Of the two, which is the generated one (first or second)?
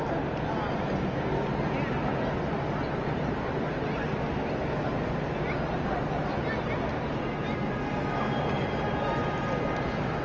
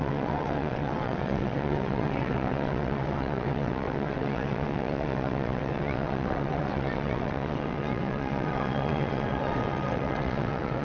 second